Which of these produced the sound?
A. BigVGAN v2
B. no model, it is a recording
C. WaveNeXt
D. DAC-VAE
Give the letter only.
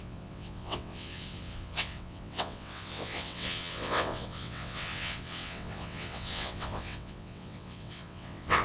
C